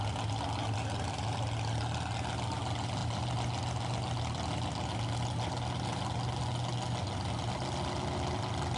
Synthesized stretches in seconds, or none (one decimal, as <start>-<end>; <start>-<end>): none